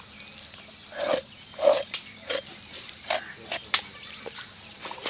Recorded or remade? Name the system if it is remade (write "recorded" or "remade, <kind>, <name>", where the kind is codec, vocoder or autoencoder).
recorded